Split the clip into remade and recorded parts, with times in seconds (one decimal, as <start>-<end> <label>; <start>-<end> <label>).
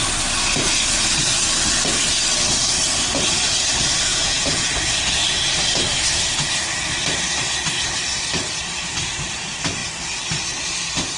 0.0-4.1 recorded; 4.1-4.7 remade; 4.7-11.2 recorded